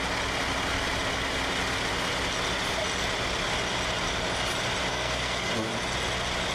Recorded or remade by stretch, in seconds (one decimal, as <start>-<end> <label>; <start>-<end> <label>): 0.0-4.9 recorded; 4.9-5.5 remade; 5.5-6.5 recorded

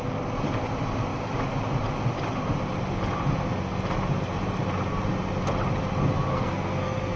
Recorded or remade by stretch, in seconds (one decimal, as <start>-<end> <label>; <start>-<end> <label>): 0.0-6.3 recorded; 6.3-7.2 remade

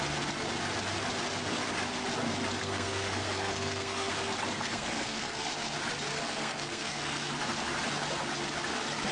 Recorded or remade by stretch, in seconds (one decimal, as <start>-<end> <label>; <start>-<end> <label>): 0.0-2.6 recorded; 2.6-4.1 remade; 4.1-4.5 recorded; 4.5-5.5 remade; 5.5-6.1 recorded; 6.1-7.3 remade; 7.3-9.1 recorded

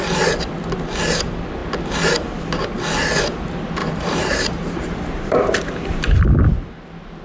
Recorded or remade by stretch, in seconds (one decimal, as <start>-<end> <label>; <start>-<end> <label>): 0.0-3.8 recorded; 3.8-5.6 remade; 5.6-7.2 recorded